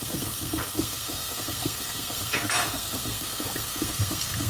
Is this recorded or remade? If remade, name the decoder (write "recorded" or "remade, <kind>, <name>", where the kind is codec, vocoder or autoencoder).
remade, codec, SNAC